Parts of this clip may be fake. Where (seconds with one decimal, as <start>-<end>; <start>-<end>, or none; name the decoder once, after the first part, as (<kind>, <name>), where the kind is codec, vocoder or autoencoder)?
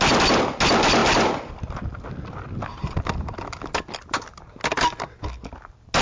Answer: none